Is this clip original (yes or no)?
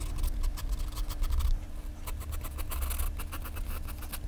yes